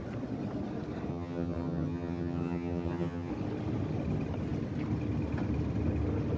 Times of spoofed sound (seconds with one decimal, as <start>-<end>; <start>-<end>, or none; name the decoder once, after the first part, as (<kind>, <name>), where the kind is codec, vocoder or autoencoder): 1.1-3.3 (vocoder, HiFi-GAN)

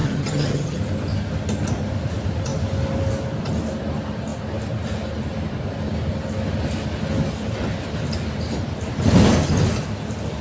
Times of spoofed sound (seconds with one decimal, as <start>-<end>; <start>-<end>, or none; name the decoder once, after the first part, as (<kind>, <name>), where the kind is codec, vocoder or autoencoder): 0.0-0.8 (vocoder, HiFi-GAN)

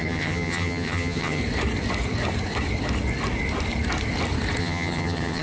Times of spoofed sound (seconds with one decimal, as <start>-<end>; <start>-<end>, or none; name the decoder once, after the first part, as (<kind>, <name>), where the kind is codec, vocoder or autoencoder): 0.0-1.4 (vocoder, HiFi-GAN); 4.6-5.4

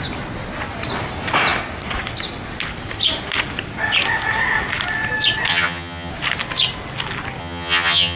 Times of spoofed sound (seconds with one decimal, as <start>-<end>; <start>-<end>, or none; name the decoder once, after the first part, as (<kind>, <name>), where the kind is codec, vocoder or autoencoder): 5.5-6.1 (vocoder, HiFi-GAN); 7.4-8.2

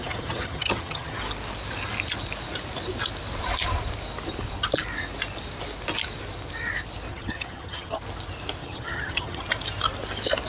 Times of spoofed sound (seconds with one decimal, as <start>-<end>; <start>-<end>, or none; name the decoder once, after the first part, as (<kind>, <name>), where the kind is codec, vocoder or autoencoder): 0.0-1.2 (vocoder, HiFi-GAN); 7.1-8.0; 8.6-9.4

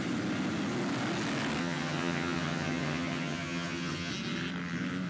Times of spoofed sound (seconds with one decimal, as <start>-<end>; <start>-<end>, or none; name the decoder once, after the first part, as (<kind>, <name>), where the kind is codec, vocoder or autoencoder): 1.6-4.1 (vocoder, HiFi-GAN)

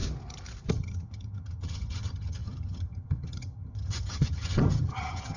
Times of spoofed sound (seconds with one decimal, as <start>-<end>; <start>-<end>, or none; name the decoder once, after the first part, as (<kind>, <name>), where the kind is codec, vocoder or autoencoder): 0.7-5.4 (vocoder, HiFi-GAN)

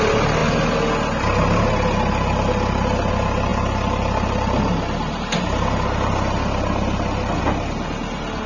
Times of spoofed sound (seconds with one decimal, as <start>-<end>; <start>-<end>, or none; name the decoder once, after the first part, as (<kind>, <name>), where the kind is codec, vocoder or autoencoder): none